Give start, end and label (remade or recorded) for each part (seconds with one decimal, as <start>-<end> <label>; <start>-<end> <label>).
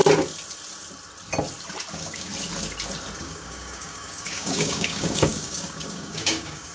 0.0-1.9 recorded; 1.9-2.3 remade; 2.3-3.2 recorded; 3.2-6.7 remade